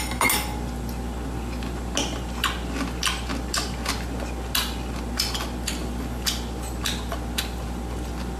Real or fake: real